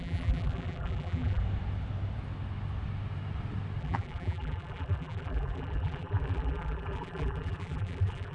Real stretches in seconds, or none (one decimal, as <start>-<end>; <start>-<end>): 1.4-3.8